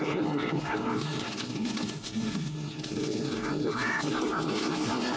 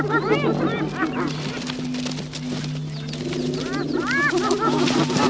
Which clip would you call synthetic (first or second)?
first